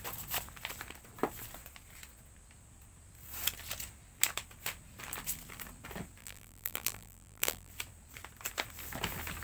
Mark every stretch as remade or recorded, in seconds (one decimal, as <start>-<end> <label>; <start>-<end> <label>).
0.0-6.2 recorded; 6.2-7.7 remade; 7.7-9.4 recorded